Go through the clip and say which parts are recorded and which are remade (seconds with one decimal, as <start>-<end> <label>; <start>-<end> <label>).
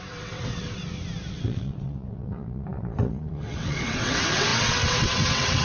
0.0-0.8 remade; 0.8-1.3 recorded; 1.3-5.6 remade